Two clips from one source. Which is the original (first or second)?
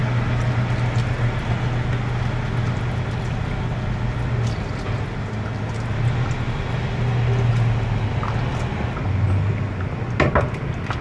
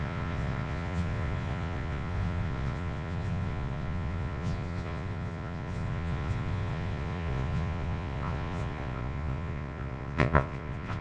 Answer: first